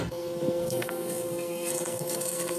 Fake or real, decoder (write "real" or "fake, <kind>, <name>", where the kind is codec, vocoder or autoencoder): fake, codec, SNAC